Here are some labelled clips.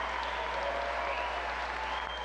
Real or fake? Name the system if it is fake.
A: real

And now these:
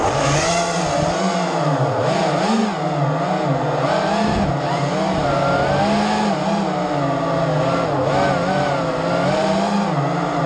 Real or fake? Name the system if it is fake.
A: real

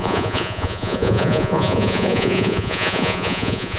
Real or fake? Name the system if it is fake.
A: fake, vocoder, Vocos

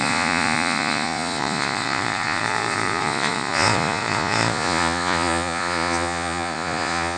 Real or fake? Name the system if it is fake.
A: fake, vocoder, Vocos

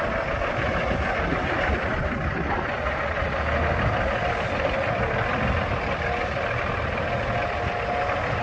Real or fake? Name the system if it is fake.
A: real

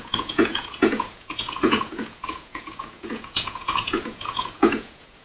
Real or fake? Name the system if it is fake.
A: fake, vocoder, Vocos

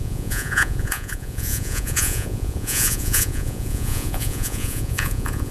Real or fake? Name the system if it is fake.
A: fake, vocoder, Vocos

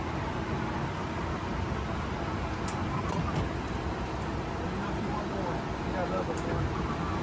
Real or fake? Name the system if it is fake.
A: real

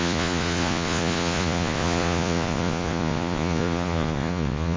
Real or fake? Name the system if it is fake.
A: fake, vocoder, Vocos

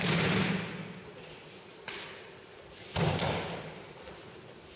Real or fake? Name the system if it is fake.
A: real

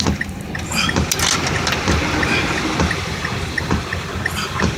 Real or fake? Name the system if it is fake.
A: real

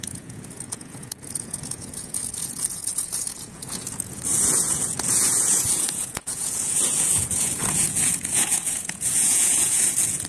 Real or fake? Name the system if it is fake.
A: fake, vocoder, Vocos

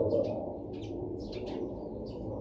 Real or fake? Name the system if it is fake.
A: real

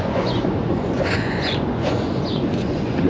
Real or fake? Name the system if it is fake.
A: fake, vocoder, Vocos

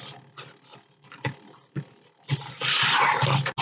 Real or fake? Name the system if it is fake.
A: real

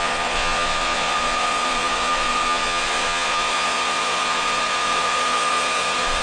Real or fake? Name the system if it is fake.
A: fake, vocoder, Vocos